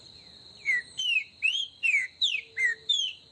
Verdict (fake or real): fake